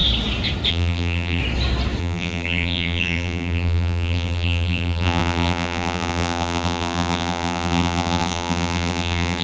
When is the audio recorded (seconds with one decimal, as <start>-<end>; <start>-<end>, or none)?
0.0-0.7; 1.4-2.0